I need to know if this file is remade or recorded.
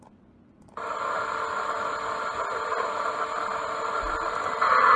remade